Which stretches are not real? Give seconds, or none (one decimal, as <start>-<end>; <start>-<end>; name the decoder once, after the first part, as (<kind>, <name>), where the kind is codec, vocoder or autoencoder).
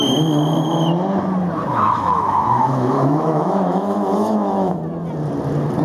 1.7-4.8 (autoencoder, DAC-VAE)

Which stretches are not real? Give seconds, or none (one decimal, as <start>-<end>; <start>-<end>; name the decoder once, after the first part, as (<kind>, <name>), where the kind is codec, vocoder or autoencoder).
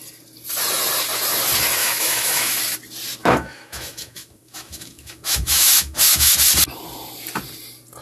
1.8-2.6 (autoencoder, DAC-VAE); 3.2-6.3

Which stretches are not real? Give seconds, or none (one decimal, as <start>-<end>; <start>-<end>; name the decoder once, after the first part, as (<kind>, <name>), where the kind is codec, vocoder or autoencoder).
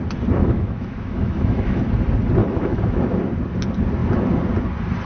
0.4-1.8 (autoencoder, DAC-VAE); 2.4-3.2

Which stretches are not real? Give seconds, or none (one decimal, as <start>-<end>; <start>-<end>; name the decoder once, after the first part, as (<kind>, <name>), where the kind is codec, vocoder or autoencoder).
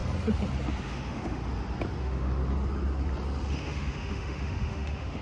0.8-1.4 (autoencoder, DAC-VAE); 2.0-2.4; 3.5-5.2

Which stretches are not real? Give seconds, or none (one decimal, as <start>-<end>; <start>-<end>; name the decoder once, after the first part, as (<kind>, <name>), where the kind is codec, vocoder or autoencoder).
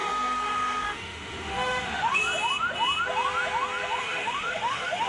0.0-2.2 (autoencoder, DAC-VAE); 4.0-5.1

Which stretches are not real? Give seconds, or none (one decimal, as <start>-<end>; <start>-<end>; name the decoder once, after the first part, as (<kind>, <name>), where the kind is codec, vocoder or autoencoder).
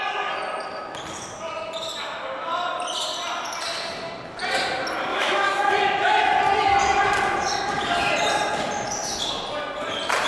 5.1-5.7 (autoencoder, DAC-VAE)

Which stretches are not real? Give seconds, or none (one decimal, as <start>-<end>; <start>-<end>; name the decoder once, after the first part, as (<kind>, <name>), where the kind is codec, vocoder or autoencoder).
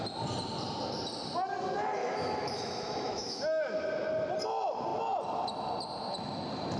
2.0-3.4 (autoencoder, DAC-VAE)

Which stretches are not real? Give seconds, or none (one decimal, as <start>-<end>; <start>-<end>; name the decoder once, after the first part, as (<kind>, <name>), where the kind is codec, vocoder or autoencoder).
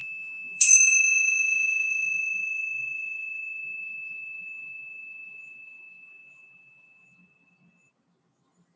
0.0-1.9 (autoencoder, DAC-VAE)